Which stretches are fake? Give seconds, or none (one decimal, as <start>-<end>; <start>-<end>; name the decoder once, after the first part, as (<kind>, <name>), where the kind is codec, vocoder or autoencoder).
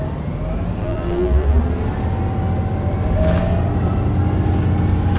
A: 0.8-1.6 (vocoder, BigVGAN v2)